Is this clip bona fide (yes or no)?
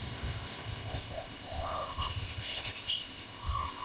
no